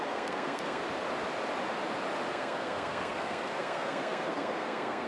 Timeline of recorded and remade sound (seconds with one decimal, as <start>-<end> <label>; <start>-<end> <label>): 0.0-0.8 remade; 0.8-2.3 recorded; 2.3-5.1 remade